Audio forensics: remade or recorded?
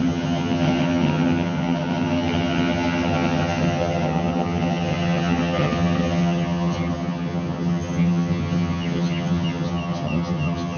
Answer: remade